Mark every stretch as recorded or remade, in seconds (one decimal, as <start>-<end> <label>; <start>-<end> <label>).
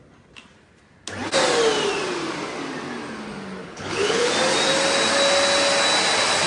0.0-3.6 recorded; 3.6-4.3 remade; 4.3-6.5 recorded